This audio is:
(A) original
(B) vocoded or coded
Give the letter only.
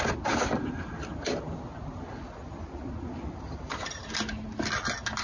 A